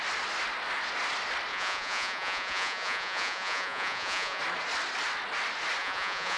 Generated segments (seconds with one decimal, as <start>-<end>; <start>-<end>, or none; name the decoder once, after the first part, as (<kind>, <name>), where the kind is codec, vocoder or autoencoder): 1.5-4.4 (vocoder, Vocos); 5.8-6.4